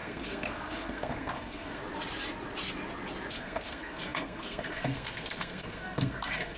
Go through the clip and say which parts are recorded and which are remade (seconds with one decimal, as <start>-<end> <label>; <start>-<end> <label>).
0.0-1.8 remade; 1.8-3.3 recorded; 3.3-6.6 remade